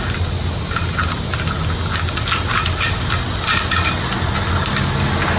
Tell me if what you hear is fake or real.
real